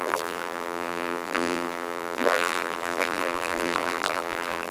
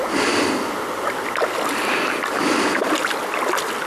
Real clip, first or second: second